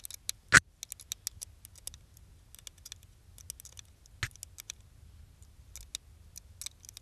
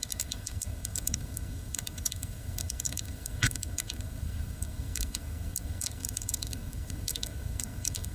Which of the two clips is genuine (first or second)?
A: first